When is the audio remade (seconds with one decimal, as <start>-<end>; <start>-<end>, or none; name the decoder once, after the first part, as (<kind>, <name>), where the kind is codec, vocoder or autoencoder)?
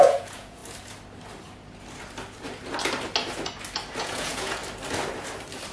0.0-0.6 (vocoder, Vocos); 4.0-4.6